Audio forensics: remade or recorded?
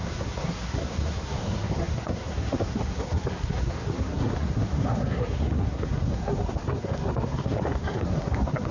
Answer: remade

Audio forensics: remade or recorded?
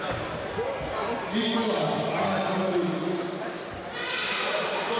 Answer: recorded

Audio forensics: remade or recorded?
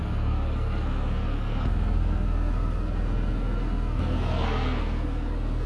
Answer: remade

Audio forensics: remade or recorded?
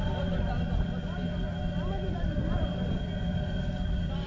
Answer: recorded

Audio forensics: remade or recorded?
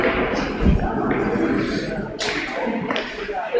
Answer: recorded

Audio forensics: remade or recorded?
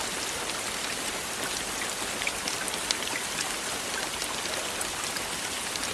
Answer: recorded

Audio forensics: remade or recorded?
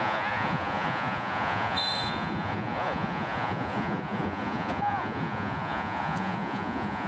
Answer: remade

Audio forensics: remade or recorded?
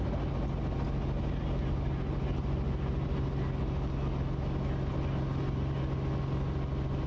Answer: recorded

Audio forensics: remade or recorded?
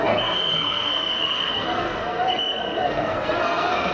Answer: remade